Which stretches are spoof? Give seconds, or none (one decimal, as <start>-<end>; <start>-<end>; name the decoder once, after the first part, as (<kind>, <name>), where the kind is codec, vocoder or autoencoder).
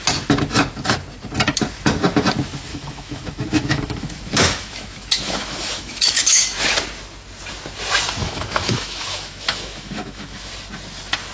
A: 2.7-6.6 (autoencoder, DAC-VAE); 8.2-10.5